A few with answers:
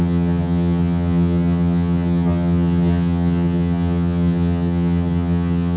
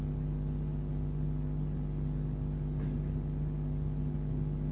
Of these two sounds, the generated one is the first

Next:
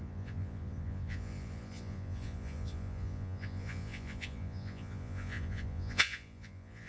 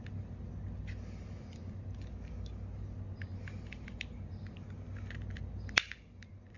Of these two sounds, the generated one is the first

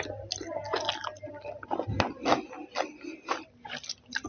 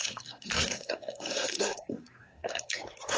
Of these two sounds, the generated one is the second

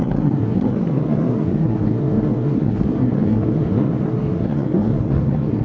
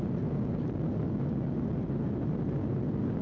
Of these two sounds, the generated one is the first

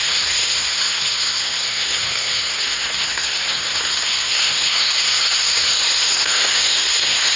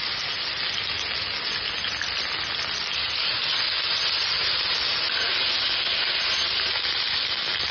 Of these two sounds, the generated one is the first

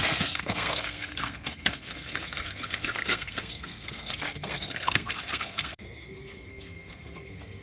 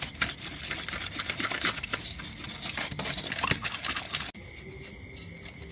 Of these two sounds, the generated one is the first